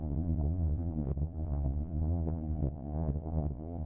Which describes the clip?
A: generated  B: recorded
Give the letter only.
A